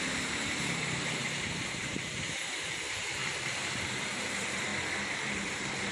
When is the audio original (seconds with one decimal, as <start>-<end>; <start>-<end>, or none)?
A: 3.2-4.0; 4.7-5.5